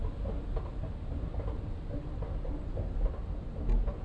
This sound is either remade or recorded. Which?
recorded